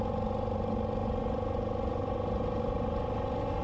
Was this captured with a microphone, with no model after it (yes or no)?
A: yes